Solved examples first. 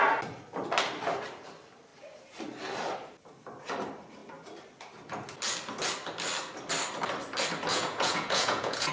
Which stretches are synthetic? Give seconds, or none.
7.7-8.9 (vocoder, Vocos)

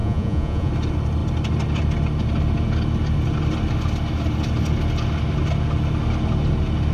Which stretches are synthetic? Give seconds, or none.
0.0-0.7 (vocoder, Vocos)

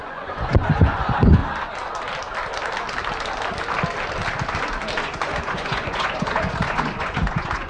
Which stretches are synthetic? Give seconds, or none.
0.0-1.4 (vocoder, Vocos); 5.0-7.7

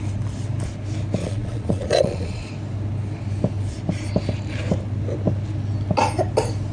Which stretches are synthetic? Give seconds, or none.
1.2-2.5 (vocoder, Vocos)

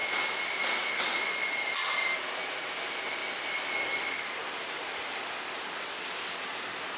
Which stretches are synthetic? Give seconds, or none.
none

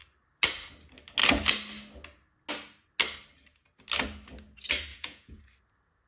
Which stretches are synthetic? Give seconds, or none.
4.9-5.4 (vocoder, Vocos)

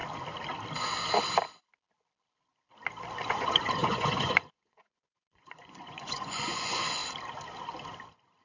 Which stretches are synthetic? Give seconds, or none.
3.3-7.0 (vocoder, Vocos)

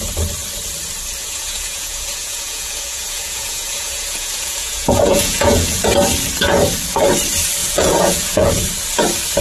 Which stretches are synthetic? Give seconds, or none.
1.2-5.8 (vocoder, Vocos); 7.6-8.5